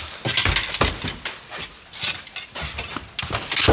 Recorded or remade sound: recorded